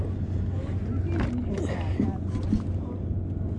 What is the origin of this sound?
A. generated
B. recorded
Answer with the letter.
B